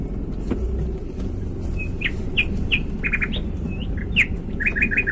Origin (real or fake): real